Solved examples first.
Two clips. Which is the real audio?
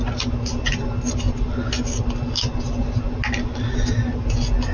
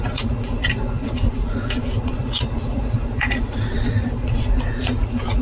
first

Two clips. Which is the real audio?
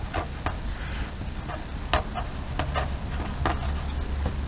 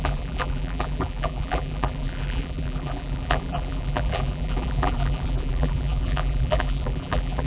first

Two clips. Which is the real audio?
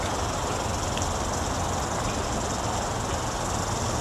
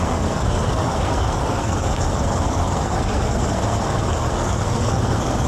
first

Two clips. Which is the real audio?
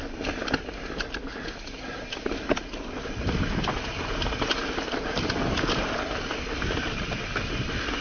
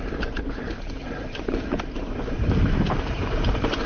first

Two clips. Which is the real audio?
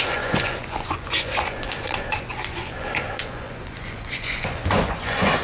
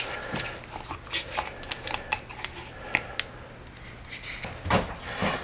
second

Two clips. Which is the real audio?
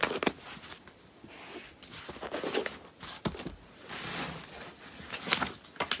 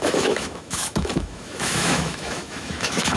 first